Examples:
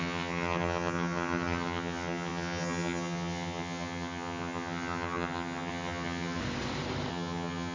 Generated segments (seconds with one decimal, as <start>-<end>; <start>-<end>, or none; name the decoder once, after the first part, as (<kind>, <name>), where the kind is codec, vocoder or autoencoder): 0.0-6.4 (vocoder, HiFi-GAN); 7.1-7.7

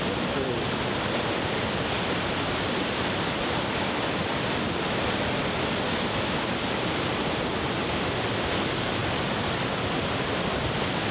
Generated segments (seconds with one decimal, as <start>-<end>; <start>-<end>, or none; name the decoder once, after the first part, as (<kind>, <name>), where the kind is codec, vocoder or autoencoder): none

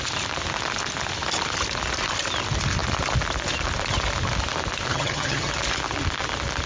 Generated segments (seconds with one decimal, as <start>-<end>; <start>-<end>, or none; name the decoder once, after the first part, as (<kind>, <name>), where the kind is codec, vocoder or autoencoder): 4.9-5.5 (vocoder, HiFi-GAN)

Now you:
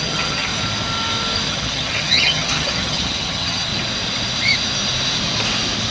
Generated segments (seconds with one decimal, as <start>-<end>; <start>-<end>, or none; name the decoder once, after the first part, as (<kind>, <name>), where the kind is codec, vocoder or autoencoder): 0.0-0.5 (vocoder, HiFi-GAN); 1.5-3.7

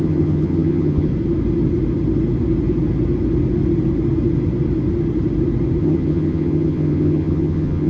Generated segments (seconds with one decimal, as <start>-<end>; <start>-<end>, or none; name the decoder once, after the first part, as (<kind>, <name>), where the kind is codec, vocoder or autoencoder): 0.0-1.1 (vocoder, HiFi-GAN); 5.8-7.9

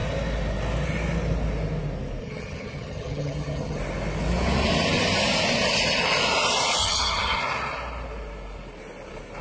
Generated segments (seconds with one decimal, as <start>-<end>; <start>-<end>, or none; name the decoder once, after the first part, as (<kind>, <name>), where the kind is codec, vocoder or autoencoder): 2.2-3.8 (vocoder, HiFi-GAN); 6.8-7.4